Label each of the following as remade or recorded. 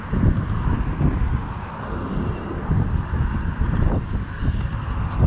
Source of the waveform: recorded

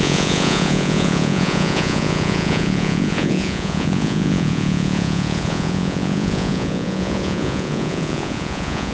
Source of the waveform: remade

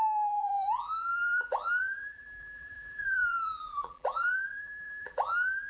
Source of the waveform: remade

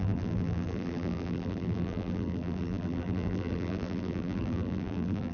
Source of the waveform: remade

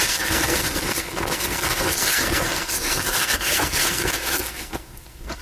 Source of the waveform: remade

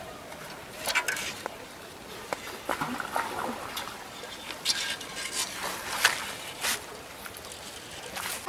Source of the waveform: recorded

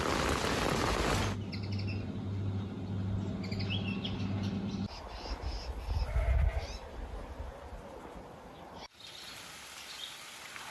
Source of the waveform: recorded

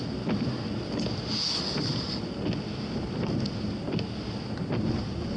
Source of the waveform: recorded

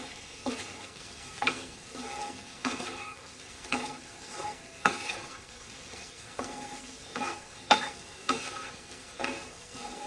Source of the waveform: remade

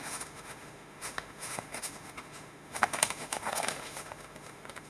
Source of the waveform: remade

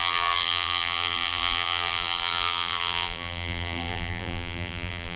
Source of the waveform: remade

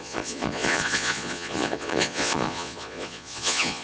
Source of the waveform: remade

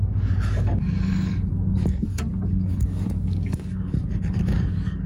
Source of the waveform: remade